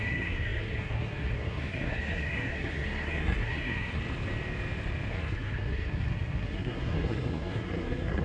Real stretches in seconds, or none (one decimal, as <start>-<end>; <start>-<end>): 4.0-5.1